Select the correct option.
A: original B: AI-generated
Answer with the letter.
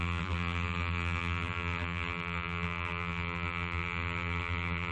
B